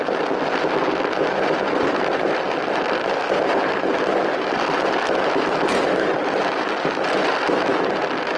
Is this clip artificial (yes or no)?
no